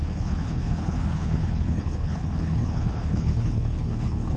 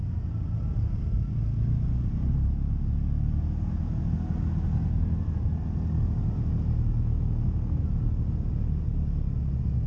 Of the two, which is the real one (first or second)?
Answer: second